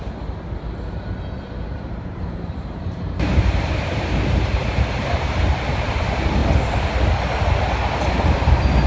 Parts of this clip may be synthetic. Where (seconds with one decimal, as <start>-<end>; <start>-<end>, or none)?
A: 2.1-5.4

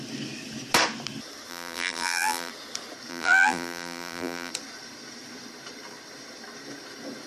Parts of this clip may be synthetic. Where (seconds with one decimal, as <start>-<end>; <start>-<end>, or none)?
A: 1.5-2.5; 3.1-4.5

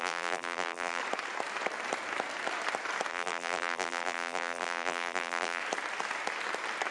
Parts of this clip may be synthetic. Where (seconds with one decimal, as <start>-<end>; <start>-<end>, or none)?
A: 0.0-1.0; 3.1-5.6

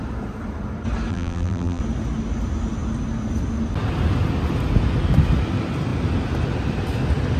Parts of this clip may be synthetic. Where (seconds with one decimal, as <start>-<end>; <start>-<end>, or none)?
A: 1.1-1.8